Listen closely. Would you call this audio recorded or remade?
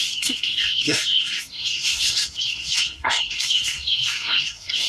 remade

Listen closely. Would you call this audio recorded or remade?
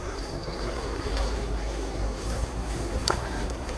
remade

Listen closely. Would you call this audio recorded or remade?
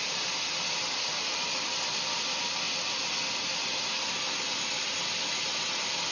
recorded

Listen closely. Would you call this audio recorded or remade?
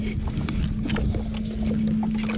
recorded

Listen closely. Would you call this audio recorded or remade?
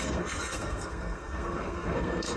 remade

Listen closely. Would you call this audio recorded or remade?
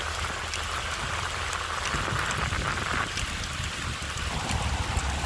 recorded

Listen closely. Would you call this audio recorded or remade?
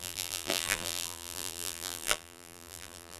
remade